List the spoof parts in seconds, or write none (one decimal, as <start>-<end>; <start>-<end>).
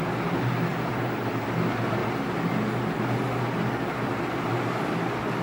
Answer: none